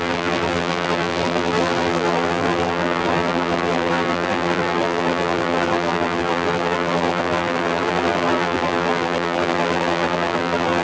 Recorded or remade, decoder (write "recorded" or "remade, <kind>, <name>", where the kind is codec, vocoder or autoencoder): remade, vocoder, BigVGAN v2